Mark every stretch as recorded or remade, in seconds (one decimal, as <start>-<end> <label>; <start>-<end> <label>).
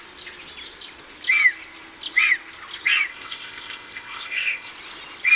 0.0-3.1 recorded; 3.1-4.7 remade; 4.7-5.4 recorded